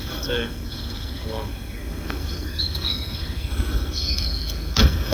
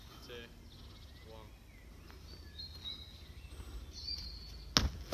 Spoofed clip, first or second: first